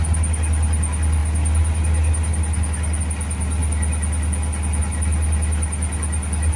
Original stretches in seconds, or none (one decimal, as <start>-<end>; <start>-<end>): 0.0-6.6